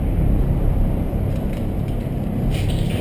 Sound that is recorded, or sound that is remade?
remade